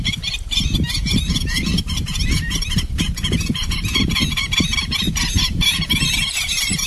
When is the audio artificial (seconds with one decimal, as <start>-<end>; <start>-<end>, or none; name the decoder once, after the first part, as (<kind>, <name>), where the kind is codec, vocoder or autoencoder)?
0.0-6.9 (vocoder, BigVGAN v2)